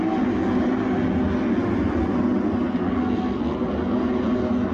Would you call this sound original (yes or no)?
yes